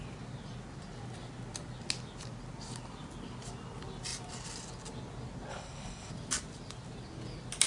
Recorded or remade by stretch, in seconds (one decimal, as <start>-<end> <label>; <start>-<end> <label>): 0.0-5.5 recorded; 5.5-6.1 remade; 6.1-7.7 recorded